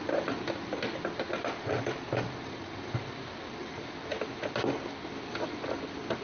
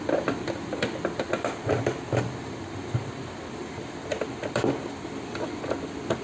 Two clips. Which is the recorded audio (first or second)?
first